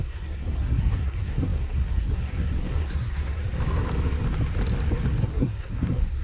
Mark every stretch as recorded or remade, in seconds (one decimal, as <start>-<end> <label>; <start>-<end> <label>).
0.0-3.4 remade; 3.4-5.2 recorded; 5.2-6.2 remade